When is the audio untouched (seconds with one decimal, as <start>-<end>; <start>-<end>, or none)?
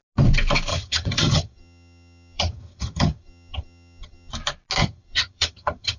0.0-0.7; 4.3-4.8